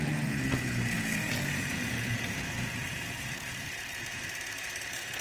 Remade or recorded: remade